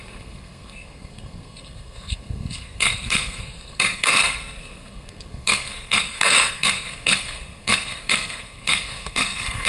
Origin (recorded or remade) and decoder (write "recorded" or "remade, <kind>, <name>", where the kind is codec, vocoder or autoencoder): remade, codec, SNAC